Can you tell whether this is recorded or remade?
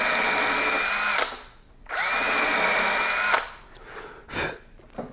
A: recorded